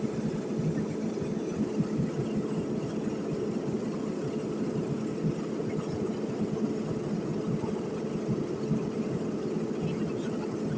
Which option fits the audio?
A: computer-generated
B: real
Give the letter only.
B